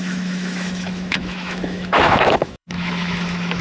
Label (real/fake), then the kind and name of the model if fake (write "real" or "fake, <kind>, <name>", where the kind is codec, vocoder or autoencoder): fake, autoencoder, DAC-VAE